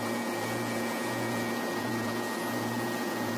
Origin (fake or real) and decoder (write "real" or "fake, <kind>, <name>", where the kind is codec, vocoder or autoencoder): fake, vocoder, Vocos